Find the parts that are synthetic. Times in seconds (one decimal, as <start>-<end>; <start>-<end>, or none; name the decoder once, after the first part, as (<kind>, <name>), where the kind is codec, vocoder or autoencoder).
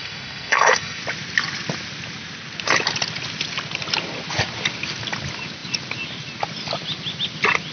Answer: 0.0-1.0 (codec, SNAC)